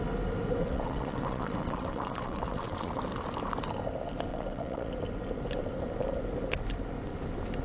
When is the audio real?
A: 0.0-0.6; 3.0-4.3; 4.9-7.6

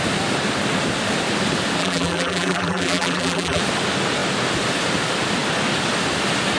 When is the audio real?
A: 0.0-1.8; 3.6-6.6

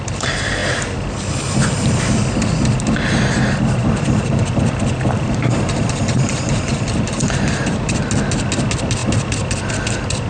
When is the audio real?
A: 0.0-3.8; 8.0-10.3

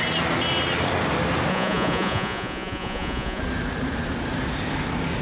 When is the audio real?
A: 0.0-1.5; 3.4-5.2

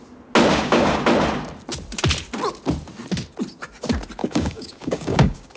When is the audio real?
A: 0.0-0.5; 1.0-4.2

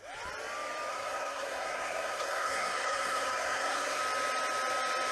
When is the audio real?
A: 0.0-0.9; 4.0-5.1

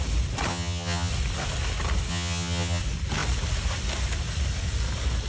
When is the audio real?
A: 0.0-0.5; 1.1-2.1; 2.8-5.3